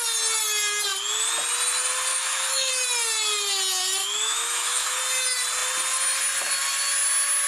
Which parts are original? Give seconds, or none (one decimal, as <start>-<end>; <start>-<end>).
0.0-2.1; 2.7-4.0; 5.0-7.5